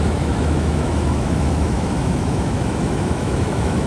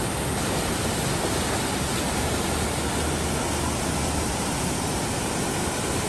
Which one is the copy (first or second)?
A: first